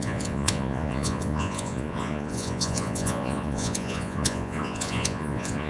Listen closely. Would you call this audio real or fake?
fake